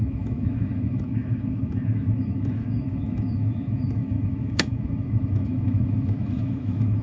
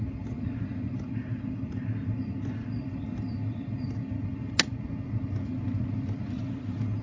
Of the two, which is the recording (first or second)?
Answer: second